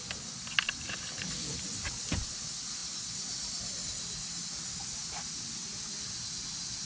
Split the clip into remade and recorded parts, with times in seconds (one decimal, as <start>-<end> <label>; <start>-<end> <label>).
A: 0.0-6.9 recorded